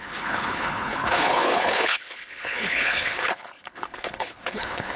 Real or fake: fake